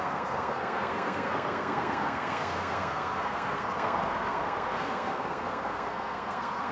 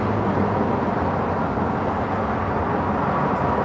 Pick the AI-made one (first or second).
first